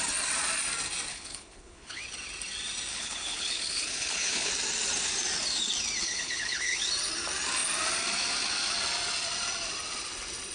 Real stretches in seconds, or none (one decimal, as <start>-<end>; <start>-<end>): 0.0-1.1; 2.0-2.9; 4.5-6.0; 6.8-10.5